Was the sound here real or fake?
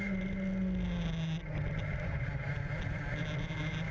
real